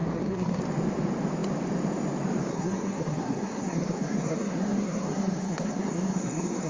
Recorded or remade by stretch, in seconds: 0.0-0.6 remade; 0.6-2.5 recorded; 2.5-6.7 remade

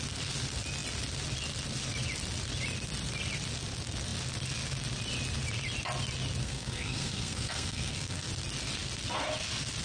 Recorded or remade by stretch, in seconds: 0.0-6.4 recorded; 6.4-8.3 remade; 8.3-9.8 recorded

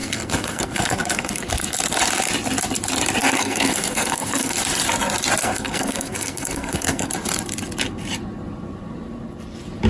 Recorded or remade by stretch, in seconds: 0.0-1.5 remade; 1.5-3.2 recorded; 3.2-4.6 remade; 4.6-5.4 recorded; 5.4-7.1 remade; 7.1-9.9 recorded

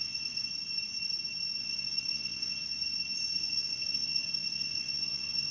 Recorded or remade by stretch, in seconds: 0.0-0.5 remade; 0.5-1.6 recorded; 1.6-2.7 remade; 2.7-3.4 recorded; 3.4-5.5 remade

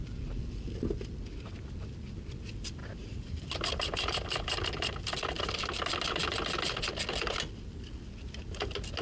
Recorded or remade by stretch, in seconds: 0.0-2.8 recorded; 2.8-3.4 remade; 3.4-9.0 recorded

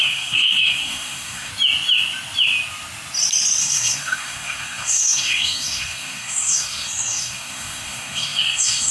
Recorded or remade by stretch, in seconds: 0.0-1.5 remade; 1.5-3.6 recorded; 3.6-8.9 remade